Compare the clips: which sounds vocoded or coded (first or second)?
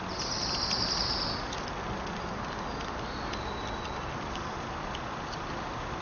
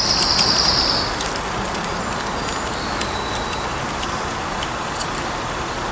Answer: second